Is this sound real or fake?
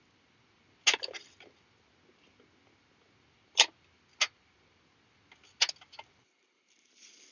real